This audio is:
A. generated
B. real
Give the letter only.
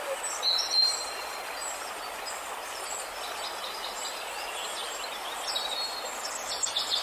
B